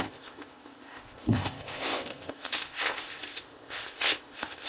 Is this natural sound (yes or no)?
no